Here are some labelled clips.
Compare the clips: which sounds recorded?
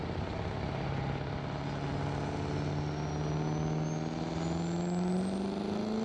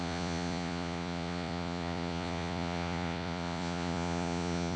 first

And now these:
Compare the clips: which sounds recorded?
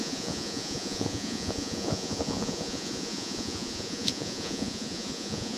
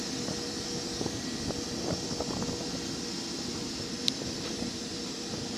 second